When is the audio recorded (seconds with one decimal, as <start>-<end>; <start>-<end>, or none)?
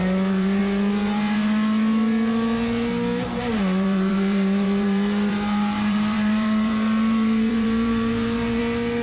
0.6-3.5; 8.6-9.0